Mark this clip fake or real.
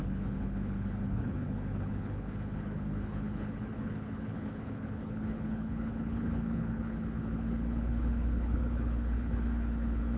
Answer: fake